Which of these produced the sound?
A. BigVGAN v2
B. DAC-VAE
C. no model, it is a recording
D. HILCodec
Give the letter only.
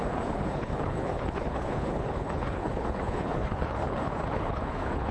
D